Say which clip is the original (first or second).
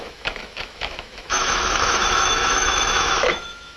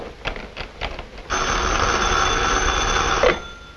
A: second